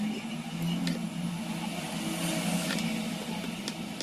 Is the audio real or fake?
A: real